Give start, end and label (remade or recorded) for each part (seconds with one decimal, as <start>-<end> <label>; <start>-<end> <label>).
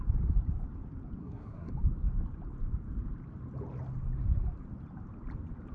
0.0-1.2 recorded; 1.2-1.7 remade; 1.7-5.7 recorded